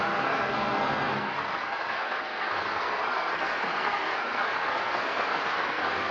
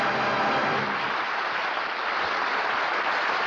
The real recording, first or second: second